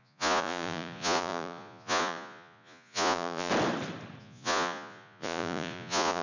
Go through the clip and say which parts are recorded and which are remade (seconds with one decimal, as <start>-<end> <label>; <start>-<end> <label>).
0.0-3.5 remade; 3.5-4.2 recorded; 4.2-6.2 remade